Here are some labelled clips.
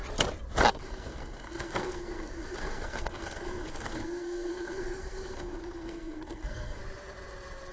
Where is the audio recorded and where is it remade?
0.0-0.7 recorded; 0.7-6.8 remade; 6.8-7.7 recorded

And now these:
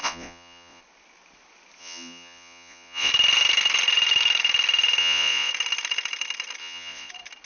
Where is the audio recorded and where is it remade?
0.0-0.8 remade; 0.8-1.8 recorded; 1.8-3.1 remade; 3.1-5.0 recorded; 5.0-5.5 remade; 5.5-6.6 recorded; 6.6-7.1 remade; 7.1-7.5 recorded

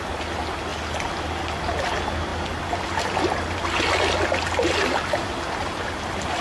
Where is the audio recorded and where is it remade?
0.0-6.4 recorded